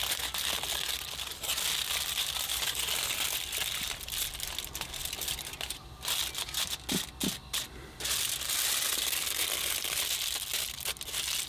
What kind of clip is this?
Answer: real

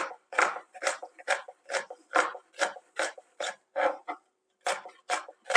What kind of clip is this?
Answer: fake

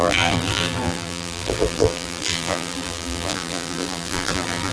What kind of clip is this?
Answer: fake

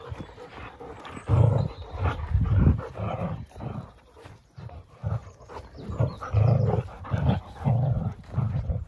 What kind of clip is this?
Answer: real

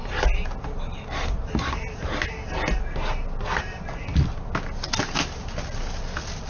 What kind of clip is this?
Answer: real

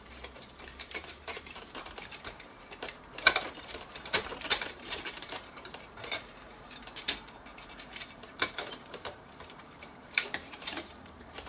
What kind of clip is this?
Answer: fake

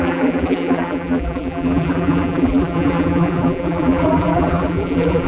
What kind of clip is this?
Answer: fake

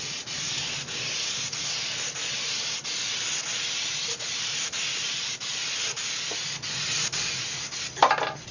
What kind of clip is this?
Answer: real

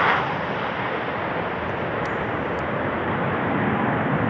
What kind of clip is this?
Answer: real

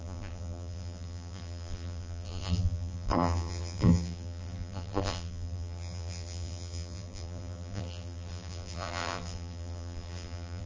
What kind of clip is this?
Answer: fake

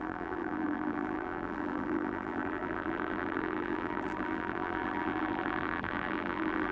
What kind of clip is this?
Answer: fake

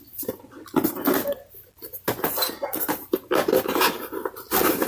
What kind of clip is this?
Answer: real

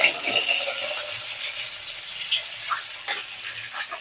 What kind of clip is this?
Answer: real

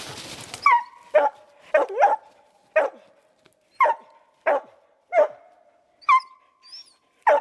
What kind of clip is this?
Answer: real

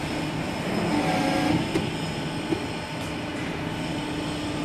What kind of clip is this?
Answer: real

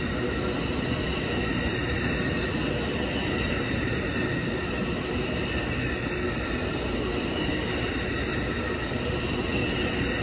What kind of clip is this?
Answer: real